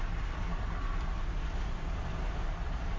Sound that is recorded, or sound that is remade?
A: recorded